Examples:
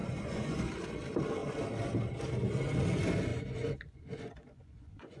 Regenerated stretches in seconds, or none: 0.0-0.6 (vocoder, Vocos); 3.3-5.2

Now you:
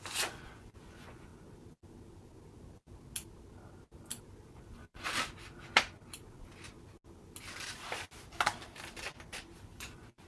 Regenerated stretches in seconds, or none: 0.0-1.3 (vocoder, Vocos); 4.5-5.1; 9.6-10.3